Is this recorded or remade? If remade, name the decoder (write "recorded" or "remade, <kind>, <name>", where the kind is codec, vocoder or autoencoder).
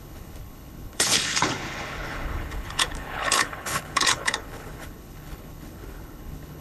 remade, codec, HILCodec